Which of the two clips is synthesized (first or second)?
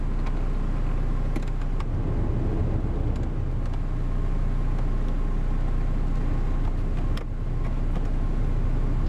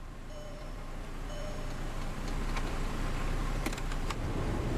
second